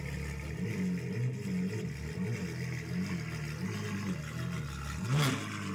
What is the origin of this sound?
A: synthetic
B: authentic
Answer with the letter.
B